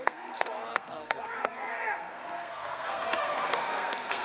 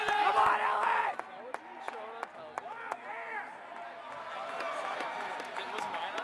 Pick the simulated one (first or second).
first